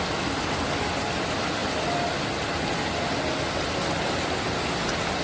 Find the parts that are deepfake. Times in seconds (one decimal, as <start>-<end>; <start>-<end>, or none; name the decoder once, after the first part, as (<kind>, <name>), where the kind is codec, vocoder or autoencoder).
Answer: none